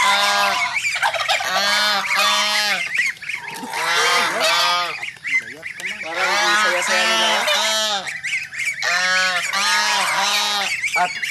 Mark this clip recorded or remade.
recorded